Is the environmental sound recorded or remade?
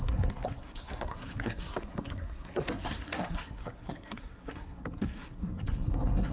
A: remade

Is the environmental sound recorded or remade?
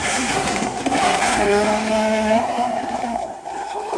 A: remade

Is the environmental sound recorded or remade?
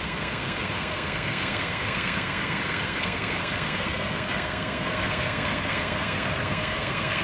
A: remade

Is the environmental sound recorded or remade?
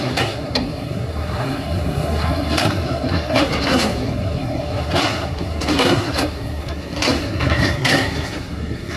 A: remade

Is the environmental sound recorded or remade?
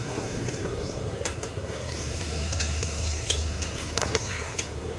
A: remade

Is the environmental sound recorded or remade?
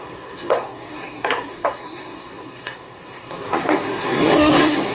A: remade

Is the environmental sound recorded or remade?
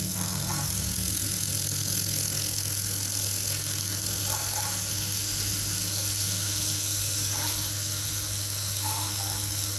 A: remade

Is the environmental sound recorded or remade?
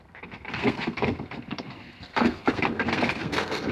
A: remade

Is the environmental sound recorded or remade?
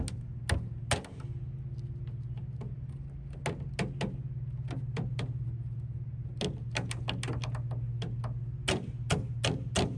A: recorded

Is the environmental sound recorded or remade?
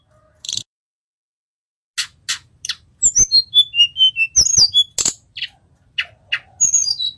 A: recorded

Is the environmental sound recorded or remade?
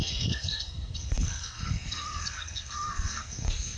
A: remade